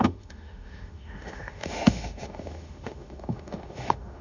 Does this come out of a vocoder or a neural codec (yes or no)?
yes